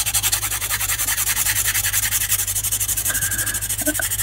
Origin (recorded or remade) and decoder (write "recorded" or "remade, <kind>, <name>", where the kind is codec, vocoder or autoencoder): remade, vocoder, BigVGAN v2